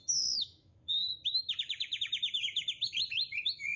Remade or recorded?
remade